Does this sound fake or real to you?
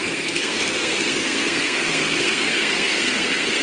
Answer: fake